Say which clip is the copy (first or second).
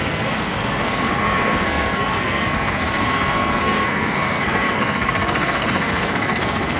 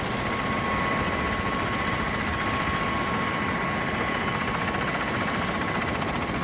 first